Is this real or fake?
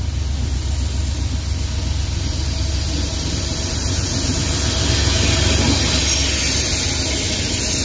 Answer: real